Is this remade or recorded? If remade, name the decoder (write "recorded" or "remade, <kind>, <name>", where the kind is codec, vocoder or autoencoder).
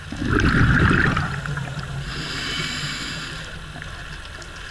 recorded